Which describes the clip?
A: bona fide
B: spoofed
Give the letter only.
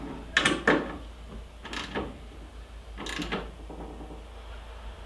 A